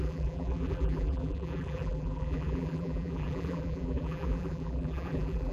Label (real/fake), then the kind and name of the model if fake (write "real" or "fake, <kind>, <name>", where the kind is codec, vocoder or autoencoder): fake, vocoder, BigVGAN v2